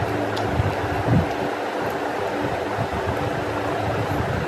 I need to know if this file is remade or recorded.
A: recorded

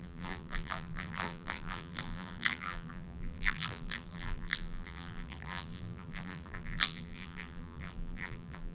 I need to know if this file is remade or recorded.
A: remade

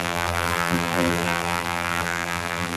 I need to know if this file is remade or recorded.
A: remade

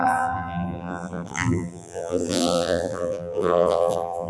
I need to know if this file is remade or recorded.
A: remade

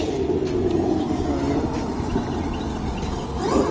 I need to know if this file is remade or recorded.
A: recorded